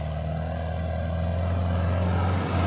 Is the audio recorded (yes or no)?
yes